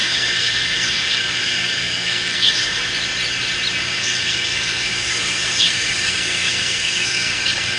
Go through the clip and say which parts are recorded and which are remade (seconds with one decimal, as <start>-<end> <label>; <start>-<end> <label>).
0.0-2.8 remade; 2.8-3.8 recorded; 3.8-7.8 remade